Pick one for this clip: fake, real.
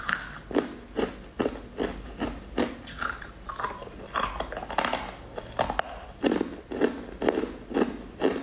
real